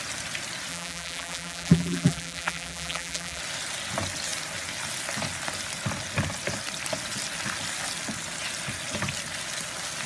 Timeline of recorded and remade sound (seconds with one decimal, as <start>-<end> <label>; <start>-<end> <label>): 0.0-0.7 recorded; 0.7-3.4 remade; 3.4-10.1 recorded